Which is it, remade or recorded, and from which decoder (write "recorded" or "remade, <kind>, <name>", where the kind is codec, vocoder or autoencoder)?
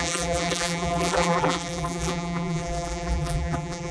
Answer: remade, vocoder, BigVGAN v2